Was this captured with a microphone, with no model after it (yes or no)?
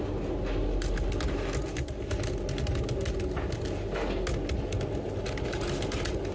yes